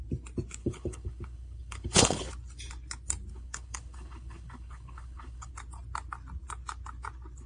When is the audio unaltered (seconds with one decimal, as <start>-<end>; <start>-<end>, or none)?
0.0-0.6; 2.3-3.3; 5.5-7.5